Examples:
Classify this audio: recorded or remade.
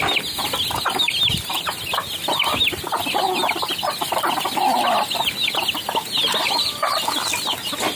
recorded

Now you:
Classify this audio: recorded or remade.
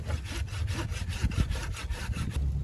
recorded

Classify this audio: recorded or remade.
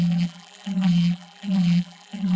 remade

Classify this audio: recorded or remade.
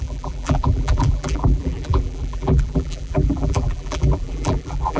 remade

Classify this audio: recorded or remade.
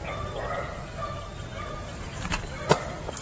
recorded